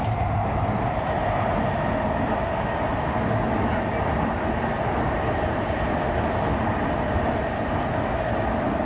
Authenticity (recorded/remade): recorded